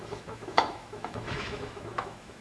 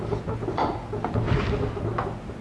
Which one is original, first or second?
second